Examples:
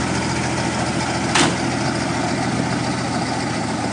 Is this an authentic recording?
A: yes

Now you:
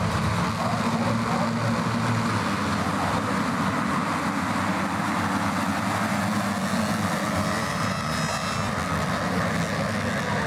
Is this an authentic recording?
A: yes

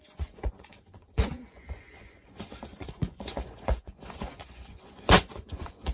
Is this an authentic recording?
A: no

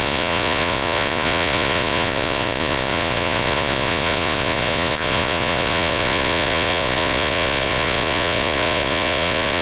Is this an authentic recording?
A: no